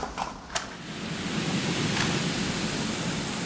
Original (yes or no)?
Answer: yes